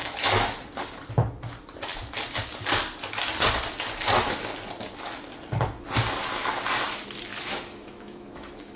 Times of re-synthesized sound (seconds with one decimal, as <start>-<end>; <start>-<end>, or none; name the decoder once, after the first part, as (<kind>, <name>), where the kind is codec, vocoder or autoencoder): 0.0-0.6 (autoencoder, DAC-VAE); 7.3-8.8